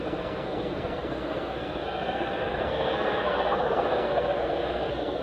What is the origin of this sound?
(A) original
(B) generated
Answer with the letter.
B